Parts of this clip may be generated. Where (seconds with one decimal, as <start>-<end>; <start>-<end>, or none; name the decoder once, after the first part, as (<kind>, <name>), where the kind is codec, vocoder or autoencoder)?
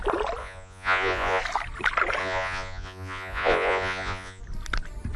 0.4-1.4 (vocoder, Vocos); 2.2-4.4